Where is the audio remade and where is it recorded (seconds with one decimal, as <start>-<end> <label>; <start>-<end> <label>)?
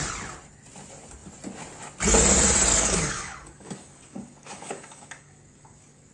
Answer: 0.0-2.7 recorded; 2.7-6.1 remade